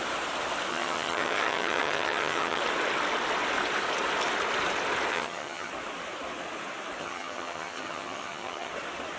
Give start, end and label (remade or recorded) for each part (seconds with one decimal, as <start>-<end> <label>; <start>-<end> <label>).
0.0-0.7 recorded; 0.7-2.6 remade; 2.6-5.1 recorded; 5.1-5.7 remade; 5.7-7.0 recorded; 7.0-8.7 remade; 8.7-9.2 recorded